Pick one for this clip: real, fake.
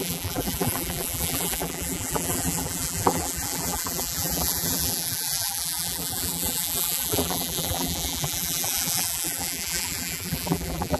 fake